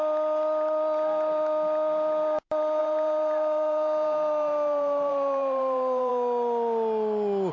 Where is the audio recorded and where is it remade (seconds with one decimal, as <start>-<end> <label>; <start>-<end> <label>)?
0.0-2.8 recorded; 2.8-6.1 remade; 6.1-7.5 recorded

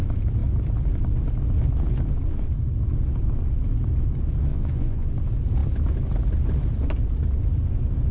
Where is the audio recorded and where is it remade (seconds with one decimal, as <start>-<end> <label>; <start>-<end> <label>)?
0.0-4.5 recorded; 4.5-5.1 remade; 5.1-8.1 recorded

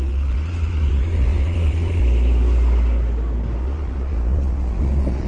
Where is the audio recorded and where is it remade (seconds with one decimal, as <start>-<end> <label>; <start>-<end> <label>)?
0.0-2.0 remade; 2.0-3.6 recorded; 3.6-5.3 remade

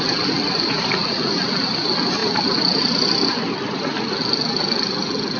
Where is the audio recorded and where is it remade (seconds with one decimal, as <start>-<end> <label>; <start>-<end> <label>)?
0.0-5.4 recorded